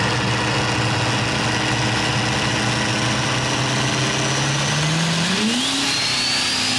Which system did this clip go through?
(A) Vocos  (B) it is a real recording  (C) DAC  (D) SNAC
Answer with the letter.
B